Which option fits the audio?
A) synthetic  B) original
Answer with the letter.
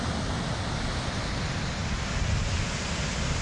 B